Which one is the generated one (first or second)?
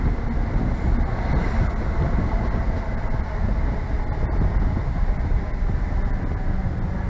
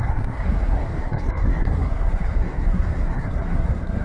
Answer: second